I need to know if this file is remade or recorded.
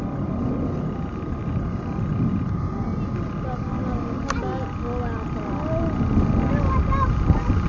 recorded